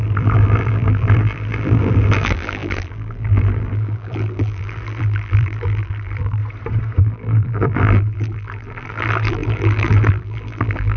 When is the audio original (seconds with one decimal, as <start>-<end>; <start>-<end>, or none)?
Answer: 6.4-7.0